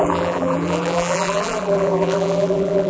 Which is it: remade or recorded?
remade